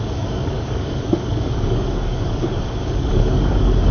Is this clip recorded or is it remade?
remade